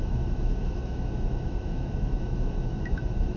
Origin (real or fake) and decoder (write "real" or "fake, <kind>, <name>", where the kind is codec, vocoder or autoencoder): fake, autoencoder, DAC-VAE